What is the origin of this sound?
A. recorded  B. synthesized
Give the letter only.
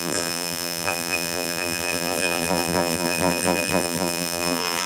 B